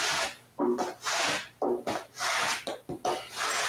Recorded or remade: recorded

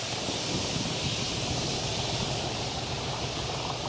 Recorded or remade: recorded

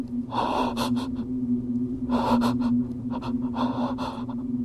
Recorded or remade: remade